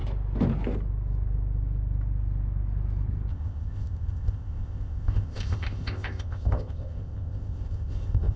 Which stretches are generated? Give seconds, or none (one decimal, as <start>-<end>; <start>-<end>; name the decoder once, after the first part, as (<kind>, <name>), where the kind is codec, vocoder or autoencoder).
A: 3.3-8.4 (codec, ZipCodec)